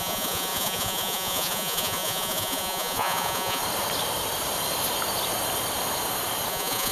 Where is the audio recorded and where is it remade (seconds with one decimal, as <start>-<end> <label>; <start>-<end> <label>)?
0.0-3.6 remade; 3.6-6.5 recorded; 6.5-6.9 remade